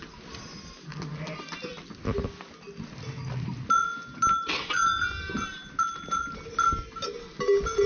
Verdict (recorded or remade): recorded